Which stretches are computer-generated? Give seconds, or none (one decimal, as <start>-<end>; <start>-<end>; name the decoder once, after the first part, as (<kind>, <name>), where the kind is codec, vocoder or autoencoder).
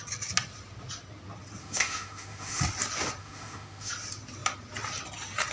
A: 1.6-2.6 (autoencoder, DAC-VAE); 3.2-3.9